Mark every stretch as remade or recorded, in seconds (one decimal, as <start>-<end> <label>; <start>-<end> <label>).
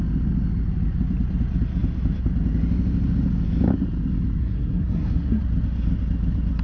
0.0-4.4 recorded; 4.4-5.4 remade; 5.4-6.6 recorded